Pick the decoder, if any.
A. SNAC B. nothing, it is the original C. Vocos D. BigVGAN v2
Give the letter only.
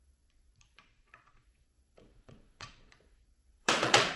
C